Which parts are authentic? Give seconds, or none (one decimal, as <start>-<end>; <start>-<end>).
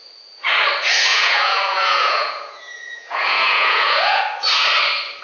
0.0-1.1; 4.2-5.2